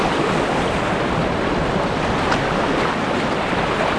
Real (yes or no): yes